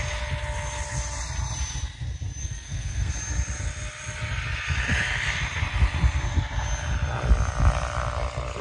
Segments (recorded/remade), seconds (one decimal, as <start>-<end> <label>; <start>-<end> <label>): 0.0-2.4 recorded; 2.4-3.1 remade; 3.1-8.6 recorded